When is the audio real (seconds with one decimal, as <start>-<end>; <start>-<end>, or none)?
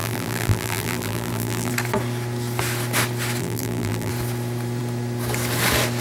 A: 1.7-3.4; 4.1-6.0